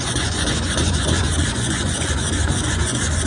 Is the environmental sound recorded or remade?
remade